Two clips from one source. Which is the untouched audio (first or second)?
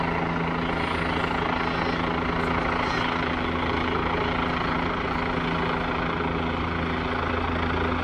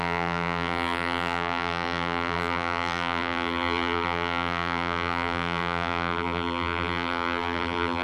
first